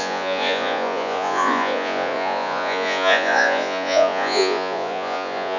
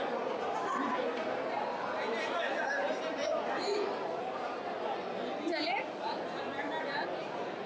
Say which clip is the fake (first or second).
first